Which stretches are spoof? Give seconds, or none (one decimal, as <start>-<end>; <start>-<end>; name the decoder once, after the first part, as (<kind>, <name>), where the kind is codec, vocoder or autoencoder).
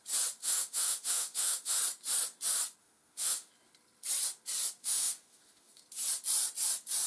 0.4-1.8 (autoencoder, DAC-VAE); 2.8-3.5; 4.8-5.8